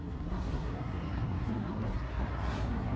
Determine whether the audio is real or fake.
fake